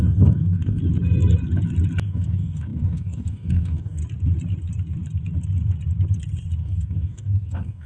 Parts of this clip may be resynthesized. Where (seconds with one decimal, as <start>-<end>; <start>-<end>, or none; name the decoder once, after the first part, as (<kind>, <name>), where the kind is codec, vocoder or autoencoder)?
0.0-0.8 (codec, DAC); 2.0-4.0; 6.6-7.9